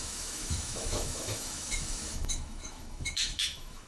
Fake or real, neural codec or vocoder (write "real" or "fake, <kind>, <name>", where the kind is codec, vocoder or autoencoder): fake, autoencoder, DAC-VAE